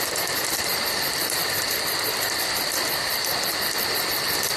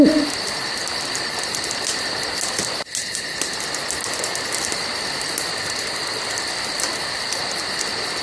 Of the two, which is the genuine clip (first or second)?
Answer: second